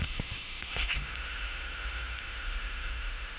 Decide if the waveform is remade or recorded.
remade